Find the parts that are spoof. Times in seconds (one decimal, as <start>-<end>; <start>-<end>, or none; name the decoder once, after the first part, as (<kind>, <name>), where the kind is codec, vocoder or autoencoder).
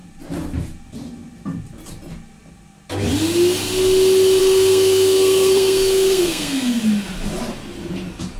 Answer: 4.4-6.8 (codec, SNAC)